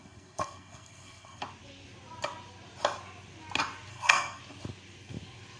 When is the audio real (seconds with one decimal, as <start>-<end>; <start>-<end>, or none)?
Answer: 1.4-3.9; 4.4-5.6